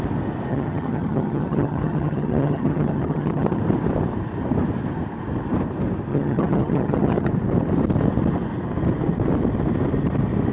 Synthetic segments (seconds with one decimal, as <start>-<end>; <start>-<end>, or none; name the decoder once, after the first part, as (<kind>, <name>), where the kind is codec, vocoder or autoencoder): 0.5-3.6 (vocoder, HiFi-GAN); 6.1-7.3